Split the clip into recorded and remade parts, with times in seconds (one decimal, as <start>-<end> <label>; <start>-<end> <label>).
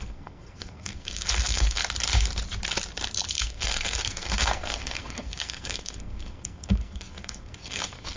0.0-1.8 remade; 1.8-3.3 recorded; 3.3-8.2 remade